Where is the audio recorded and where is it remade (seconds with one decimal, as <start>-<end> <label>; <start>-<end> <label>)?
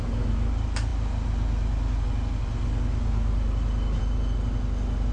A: 0.0-5.1 recorded